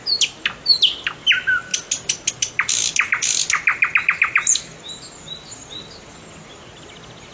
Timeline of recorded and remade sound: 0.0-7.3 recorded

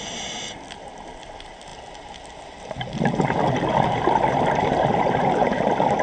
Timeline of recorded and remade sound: 0.0-6.0 recorded

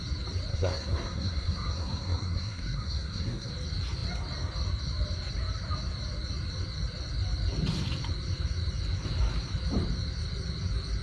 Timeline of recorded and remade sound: 0.0-0.5 recorded; 0.5-3.5 remade; 3.5-11.0 recorded